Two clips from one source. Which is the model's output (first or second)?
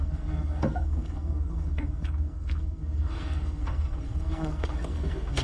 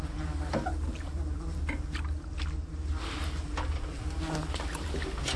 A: first